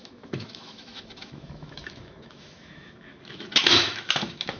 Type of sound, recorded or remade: remade